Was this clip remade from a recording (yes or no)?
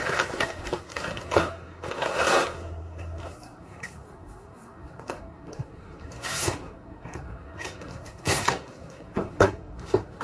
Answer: yes